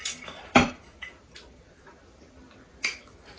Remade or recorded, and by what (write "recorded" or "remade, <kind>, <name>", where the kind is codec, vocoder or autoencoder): remade, vocoder, BigVGAN v2